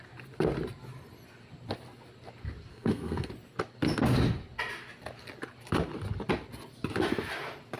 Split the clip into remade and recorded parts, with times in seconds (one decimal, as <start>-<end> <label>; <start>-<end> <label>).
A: 0.0-2.7 recorded; 2.7-3.3 remade; 3.3-7.8 recorded